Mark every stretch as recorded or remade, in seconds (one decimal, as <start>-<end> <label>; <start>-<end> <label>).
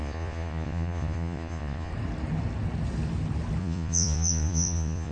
0.0-1.9 remade; 1.9-3.6 recorded; 3.6-5.1 remade